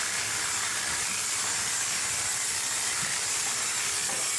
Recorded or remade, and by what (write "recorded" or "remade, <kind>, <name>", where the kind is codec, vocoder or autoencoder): recorded